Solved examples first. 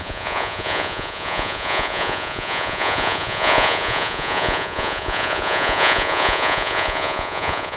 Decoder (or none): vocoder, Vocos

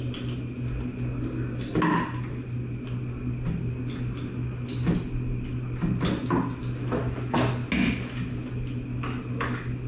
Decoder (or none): none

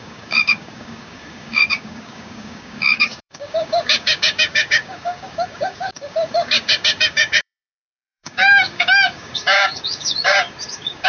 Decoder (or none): codec, DAC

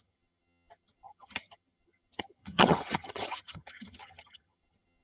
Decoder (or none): vocoder, HiFi-GAN